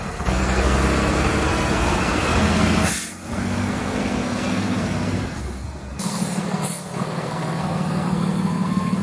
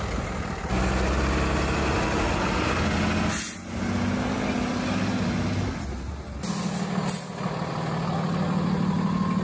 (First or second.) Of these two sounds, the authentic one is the second